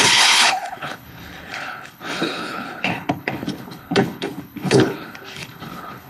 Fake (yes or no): yes